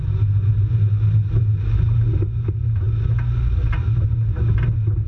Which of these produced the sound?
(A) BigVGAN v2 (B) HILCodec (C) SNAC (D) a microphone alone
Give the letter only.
D